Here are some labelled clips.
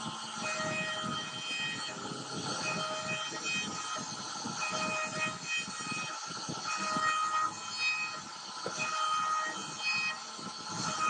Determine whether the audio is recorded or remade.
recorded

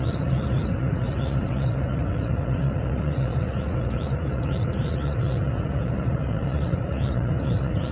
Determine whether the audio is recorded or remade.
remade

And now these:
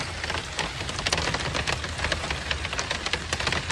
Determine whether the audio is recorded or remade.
recorded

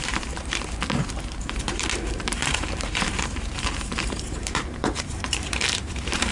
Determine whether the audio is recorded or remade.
remade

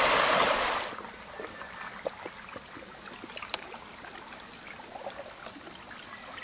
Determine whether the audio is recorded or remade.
recorded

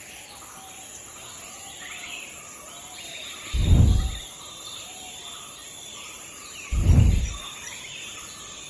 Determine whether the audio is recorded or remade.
recorded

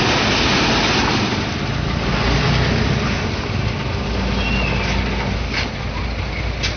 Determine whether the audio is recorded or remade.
recorded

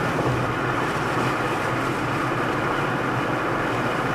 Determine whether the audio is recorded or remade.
recorded